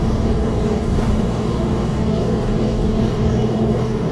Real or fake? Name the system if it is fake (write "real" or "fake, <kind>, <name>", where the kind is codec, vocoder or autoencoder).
fake, codec, DAC